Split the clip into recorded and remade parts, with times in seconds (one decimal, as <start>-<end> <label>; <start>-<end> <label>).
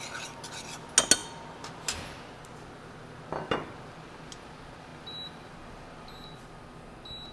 0.0-7.3 recorded